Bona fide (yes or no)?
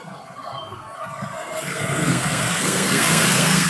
no